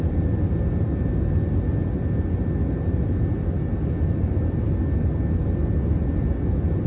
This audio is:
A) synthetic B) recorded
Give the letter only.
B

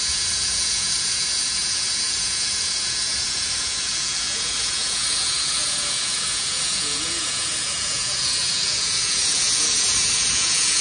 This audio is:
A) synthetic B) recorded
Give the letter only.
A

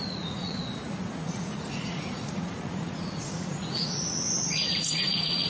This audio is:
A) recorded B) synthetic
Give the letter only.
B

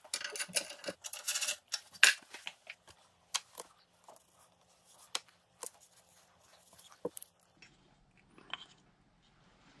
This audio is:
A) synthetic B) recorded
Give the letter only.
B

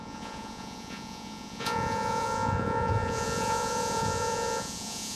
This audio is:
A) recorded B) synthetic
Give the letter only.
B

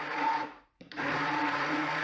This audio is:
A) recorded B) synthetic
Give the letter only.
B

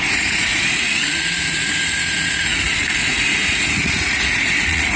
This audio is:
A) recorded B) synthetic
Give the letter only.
B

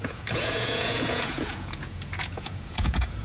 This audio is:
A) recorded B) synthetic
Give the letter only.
B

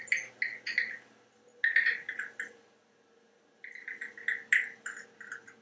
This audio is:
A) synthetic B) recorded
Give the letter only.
B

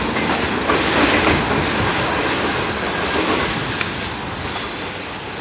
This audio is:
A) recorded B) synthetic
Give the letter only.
A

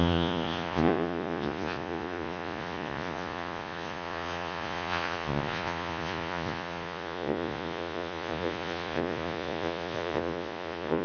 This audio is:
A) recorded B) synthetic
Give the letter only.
B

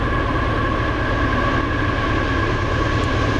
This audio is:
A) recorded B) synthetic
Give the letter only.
A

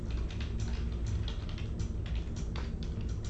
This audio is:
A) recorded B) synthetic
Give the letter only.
A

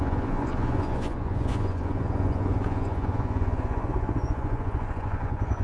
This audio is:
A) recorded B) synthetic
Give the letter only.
B